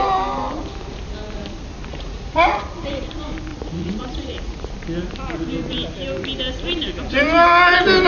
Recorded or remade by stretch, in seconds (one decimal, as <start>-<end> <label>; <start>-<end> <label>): 0.0-1.9 recorded; 1.9-2.6 remade; 2.6-3.5 recorded; 3.5-4.7 remade; 4.7-8.1 recorded